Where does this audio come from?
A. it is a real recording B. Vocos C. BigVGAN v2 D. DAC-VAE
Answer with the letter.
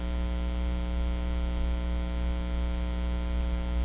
A